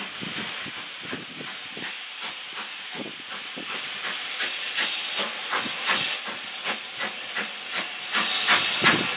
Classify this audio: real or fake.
real